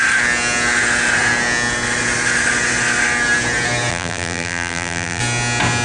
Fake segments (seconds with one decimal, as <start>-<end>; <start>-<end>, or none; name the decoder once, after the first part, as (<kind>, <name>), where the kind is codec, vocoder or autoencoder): 3.9-5.2 (vocoder, BigVGAN v2)